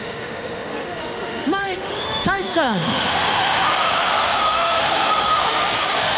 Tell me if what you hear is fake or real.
fake